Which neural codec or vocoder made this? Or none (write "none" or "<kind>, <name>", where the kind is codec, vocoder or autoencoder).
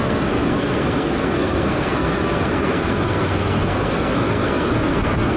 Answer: codec, SNAC